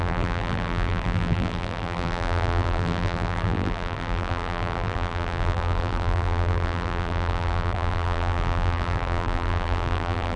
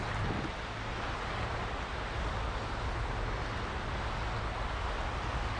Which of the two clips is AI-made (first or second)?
first